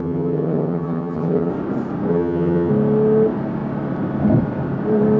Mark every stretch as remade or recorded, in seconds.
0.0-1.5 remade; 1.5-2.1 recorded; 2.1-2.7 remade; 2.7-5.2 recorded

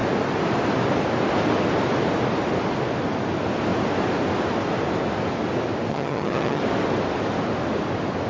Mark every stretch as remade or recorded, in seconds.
0.0-5.9 recorded; 5.9-6.6 remade; 6.6-8.3 recorded

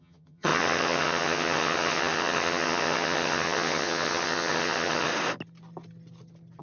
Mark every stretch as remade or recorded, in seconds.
0.0-5.1 remade; 5.1-6.6 recorded

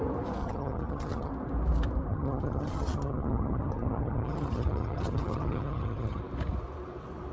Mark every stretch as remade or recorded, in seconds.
0.0-0.4 recorded; 0.4-1.3 remade; 1.3-2.1 recorded; 2.1-6.2 remade; 6.2-7.3 recorded

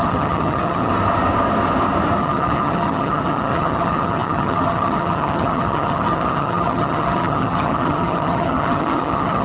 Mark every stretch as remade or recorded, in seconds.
0.0-0.9 remade; 0.9-2.2 recorded; 2.2-9.4 remade

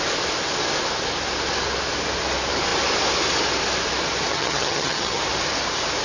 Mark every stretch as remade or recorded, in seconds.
0.0-4.3 recorded; 4.3-5.2 remade; 5.2-6.0 recorded

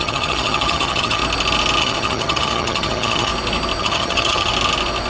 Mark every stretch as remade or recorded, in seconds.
0.0-1.2 remade; 1.2-1.8 recorded; 1.8-3.3 remade; 3.3-3.8 recorded; 3.8-4.5 remade; 4.5-5.1 recorded